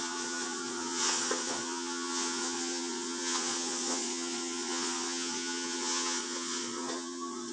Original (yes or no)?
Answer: no